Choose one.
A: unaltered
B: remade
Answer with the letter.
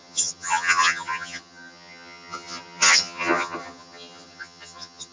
B